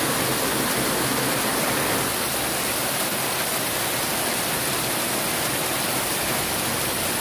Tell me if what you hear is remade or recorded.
recorded